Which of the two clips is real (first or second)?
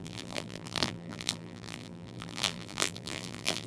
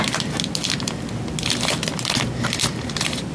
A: second